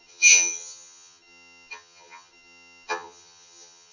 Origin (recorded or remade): remade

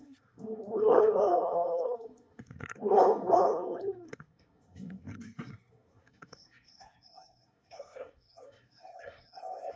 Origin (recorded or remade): remade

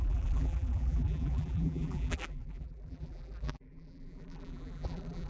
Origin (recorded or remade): remade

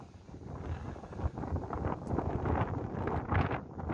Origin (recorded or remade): recorded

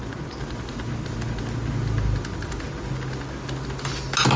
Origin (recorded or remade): recorded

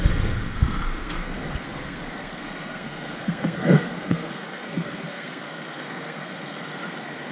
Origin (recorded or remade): remade